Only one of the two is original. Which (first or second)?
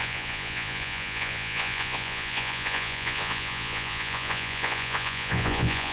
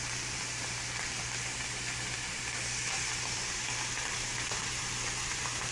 second